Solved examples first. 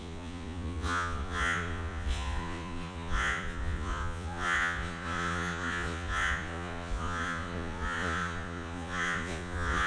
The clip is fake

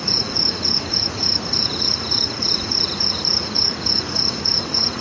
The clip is fake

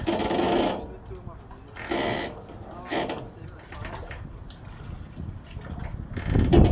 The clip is real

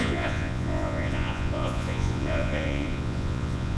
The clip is fake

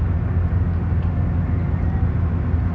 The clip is real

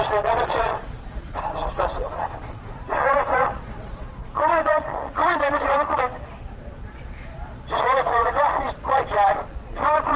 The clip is fake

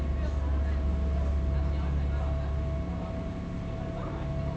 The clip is real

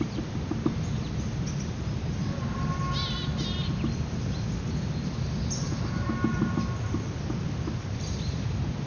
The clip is real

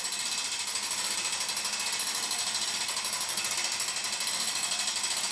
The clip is real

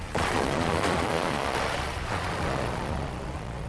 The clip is fake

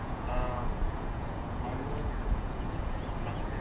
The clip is fake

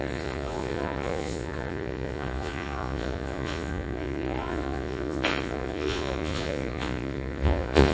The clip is fake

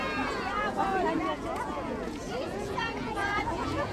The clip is fake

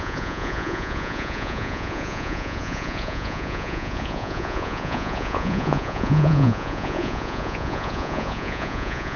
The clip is fake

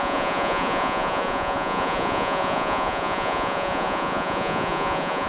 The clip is fake